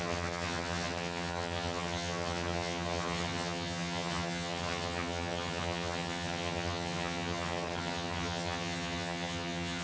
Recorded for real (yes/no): no